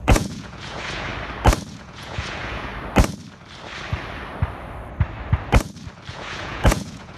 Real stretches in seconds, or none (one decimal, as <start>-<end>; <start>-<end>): 1.1-1.7; 2.7-6.1